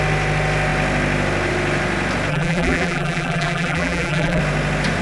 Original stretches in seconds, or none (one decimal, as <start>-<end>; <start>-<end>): 0.0-2.3; 4.4-5.0